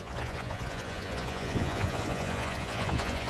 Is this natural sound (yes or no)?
no